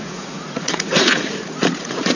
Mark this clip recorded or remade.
remade